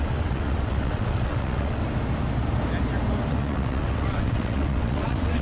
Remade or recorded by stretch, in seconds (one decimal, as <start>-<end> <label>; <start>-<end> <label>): 0.0-1.8 remade; 1.8-3.3 recorded; 3.3-5.4 remade